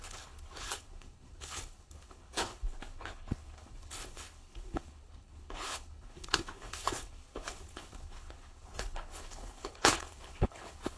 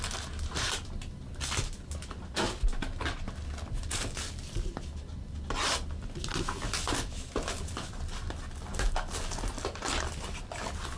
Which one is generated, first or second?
first